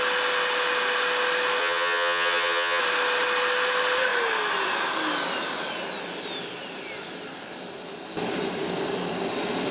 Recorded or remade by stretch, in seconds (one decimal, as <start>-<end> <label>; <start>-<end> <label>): 0.0-1.6 recorded; 1.6-2.8 remade; 2.8-9.7 recorded